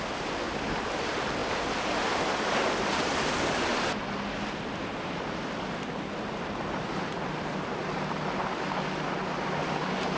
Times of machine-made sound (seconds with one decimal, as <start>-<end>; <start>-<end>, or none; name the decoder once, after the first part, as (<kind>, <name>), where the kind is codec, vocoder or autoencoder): none